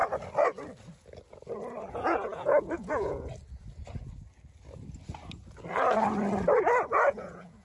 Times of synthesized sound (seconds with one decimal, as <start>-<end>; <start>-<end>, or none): 1.9-3.3; 7.1-7.6